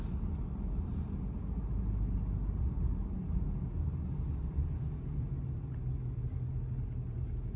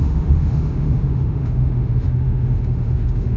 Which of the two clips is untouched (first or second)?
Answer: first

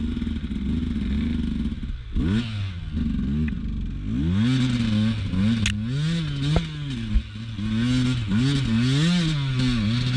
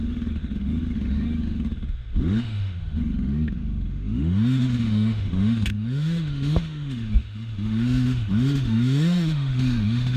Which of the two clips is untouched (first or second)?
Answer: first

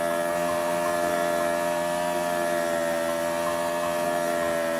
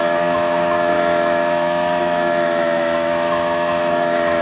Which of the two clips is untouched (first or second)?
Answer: first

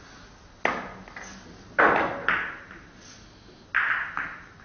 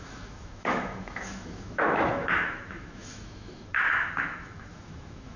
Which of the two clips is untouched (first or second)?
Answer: first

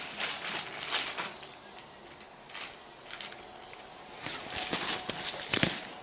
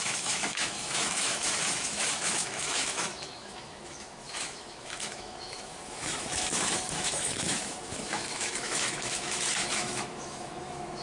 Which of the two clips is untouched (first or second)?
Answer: first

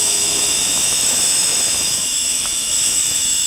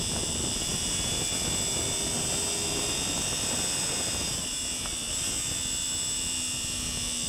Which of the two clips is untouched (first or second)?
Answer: second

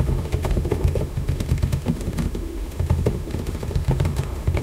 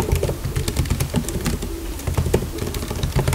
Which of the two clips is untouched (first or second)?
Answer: second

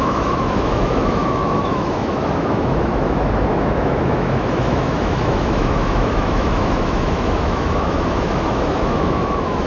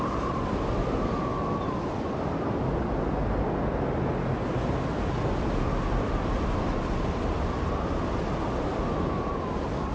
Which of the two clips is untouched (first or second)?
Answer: second